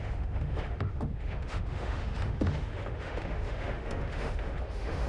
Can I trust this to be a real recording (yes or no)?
no